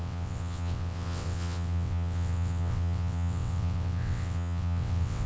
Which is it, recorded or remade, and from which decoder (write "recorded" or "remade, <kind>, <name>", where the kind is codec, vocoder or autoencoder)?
remade, vocoder, WaveNeXt